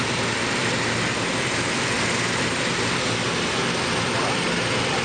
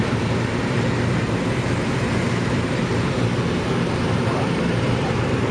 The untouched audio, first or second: first